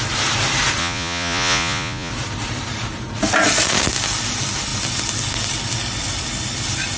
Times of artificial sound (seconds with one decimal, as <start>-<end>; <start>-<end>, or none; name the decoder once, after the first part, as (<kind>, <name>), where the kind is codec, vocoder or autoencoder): 0.8-2.1 (vocoder, Vocos)